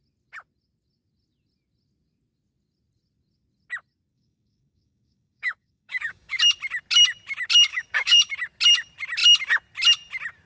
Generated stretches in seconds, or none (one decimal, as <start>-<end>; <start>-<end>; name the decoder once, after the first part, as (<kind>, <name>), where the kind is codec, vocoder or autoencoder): 4.1-6.4 (codec, DAC); 7.7-8.3